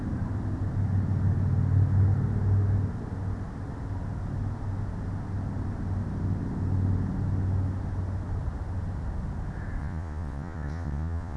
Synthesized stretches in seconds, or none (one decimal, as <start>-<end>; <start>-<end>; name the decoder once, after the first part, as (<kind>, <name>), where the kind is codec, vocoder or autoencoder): 9.8-11.4 (vocoder, Vocos)